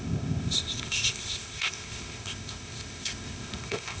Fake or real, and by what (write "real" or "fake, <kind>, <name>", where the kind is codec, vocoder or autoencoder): fake, codec, ZipCodec